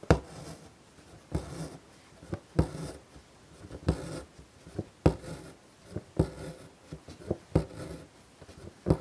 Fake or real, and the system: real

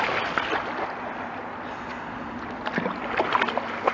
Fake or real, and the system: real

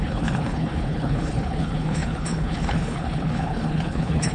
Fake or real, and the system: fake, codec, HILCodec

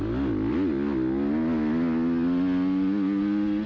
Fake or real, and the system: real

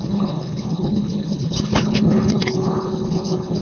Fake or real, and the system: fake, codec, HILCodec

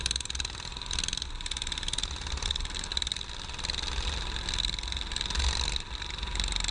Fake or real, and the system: real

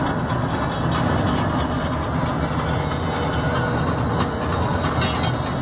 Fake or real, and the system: real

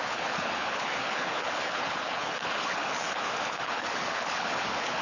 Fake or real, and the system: fake, codec, HILCodec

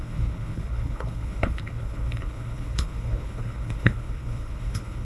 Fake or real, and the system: fake, codec, HILCodec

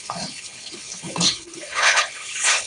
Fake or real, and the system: fake, codec, HILCodec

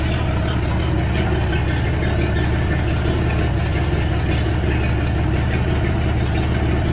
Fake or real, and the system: real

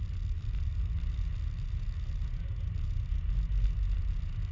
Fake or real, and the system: real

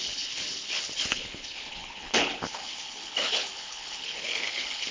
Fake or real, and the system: fake, codec, HILCodec